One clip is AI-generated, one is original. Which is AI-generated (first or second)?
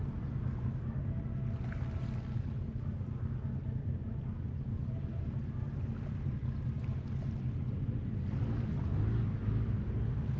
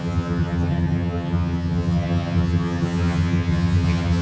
second